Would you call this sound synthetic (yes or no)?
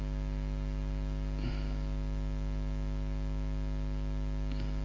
no